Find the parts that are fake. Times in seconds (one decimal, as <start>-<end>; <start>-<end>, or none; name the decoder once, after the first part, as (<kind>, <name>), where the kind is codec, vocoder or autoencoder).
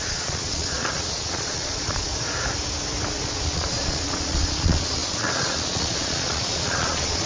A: 0.0-2.1 (vocoder, Vocos); 3.1-7.3